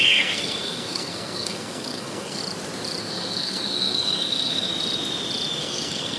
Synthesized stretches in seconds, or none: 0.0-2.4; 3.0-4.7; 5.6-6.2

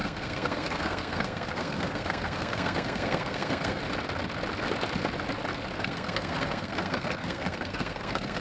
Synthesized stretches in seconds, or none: 0.0-3.8; 5.8-8.4

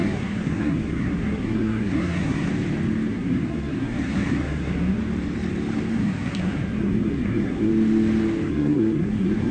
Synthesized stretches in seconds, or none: 0.0-2.5; 3.1-5.0; 5.9-7.7; 8.5-9.5

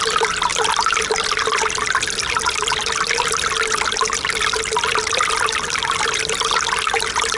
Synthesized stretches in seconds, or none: none

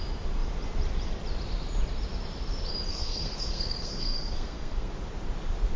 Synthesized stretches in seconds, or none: 2.9-4.9

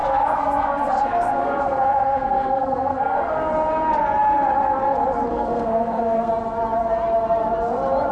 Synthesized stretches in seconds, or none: 0.0-3.5; 5.3-6.3

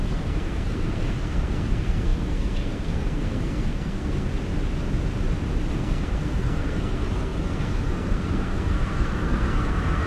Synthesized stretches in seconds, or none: 0.0-4.3; 5.7-10.1

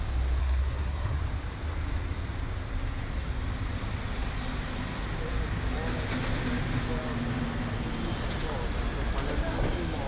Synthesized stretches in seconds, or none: 0.4-1.2